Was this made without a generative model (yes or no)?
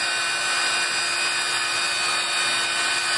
yes